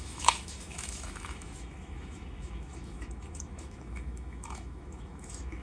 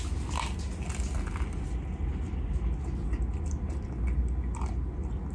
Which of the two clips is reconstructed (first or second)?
first